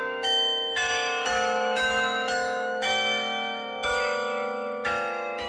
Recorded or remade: remade